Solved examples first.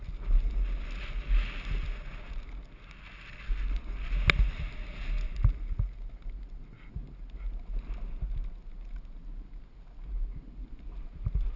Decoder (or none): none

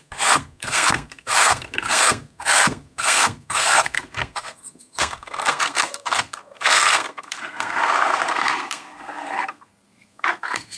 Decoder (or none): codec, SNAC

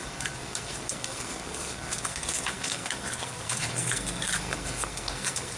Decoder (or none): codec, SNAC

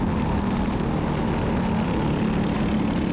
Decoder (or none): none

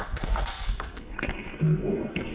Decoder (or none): codec, SNAC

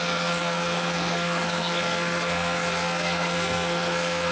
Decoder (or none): codec, SNAC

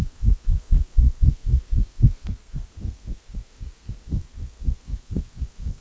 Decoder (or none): codec, SNAC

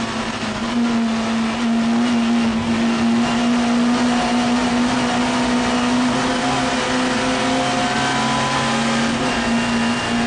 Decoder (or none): none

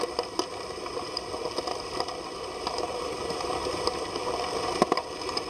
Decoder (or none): none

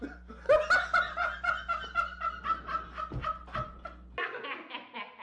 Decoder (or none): none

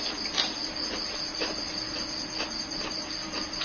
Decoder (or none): none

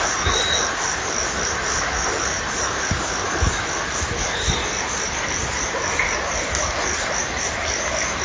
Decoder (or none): none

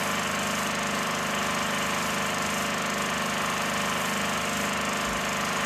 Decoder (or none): none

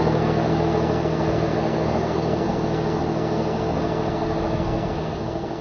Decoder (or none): codec, SNAC